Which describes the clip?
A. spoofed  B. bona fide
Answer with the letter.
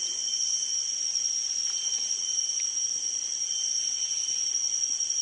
B